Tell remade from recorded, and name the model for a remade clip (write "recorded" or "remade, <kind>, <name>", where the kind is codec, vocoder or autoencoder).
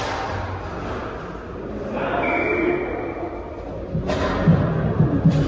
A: recorded